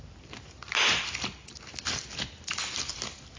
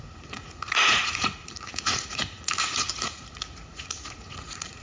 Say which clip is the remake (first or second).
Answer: second